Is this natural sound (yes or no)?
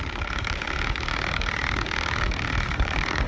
no